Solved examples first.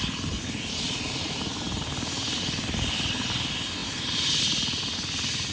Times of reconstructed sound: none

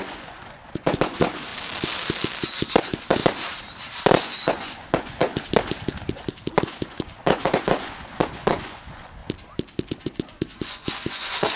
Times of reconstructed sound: 0.0-1.5 (vocoder, Vocos); 2.8-3.2; 4.2-5.3; 6.6-9.2; 9.9-11.6

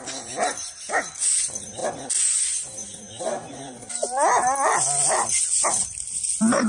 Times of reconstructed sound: none

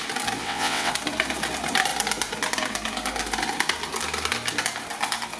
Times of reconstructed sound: 0.4-0.9 (vocoder, WaveNeXt)

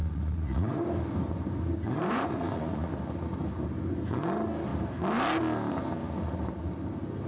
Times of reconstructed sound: 0.0-0.8 (vocoder, Vocos); 2.0-2.9